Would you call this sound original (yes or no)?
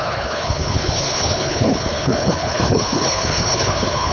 no